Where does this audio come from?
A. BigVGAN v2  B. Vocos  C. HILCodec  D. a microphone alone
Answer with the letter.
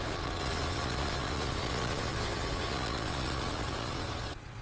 B